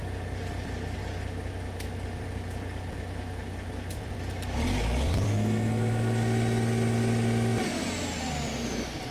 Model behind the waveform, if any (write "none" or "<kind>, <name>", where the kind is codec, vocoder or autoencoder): none